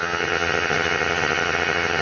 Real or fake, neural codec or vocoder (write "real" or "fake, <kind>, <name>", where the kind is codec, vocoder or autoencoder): fake, vocoder, HiFi-GAN